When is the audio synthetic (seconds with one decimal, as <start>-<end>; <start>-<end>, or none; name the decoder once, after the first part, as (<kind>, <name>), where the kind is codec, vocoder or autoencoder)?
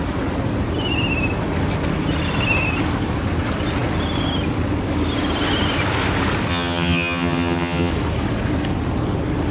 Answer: 6.5-7.9 (vocoder, HiFi-GAN)